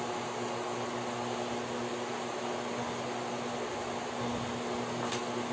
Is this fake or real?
real